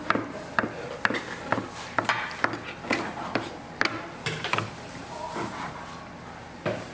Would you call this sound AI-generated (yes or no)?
no